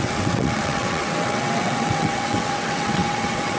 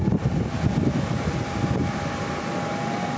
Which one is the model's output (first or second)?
first